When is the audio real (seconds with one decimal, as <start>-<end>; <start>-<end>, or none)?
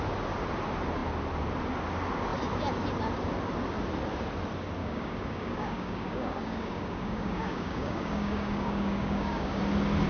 0.0-4.8; 9.6-10.1